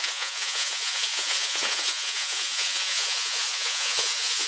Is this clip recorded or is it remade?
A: remade